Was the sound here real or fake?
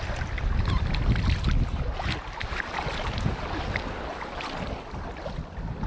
real